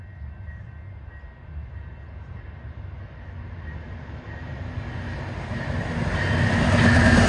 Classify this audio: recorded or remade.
recorded